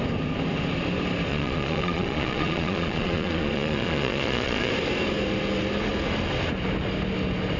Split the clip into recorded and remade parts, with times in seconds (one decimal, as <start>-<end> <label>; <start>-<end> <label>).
0.0-1.3 recorded; 1.3-4.7 remade; 4.7-7.6 recorded